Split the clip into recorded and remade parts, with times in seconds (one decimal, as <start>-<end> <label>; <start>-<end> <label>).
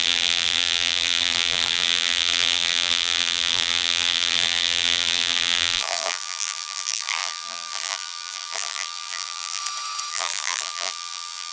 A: 0.0-9.6 remade; 9.6-10.1 recorded; 10.1-11.5 remade